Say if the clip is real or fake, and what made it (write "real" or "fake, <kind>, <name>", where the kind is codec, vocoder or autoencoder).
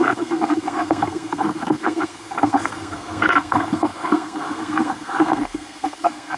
fake, codec, SNAC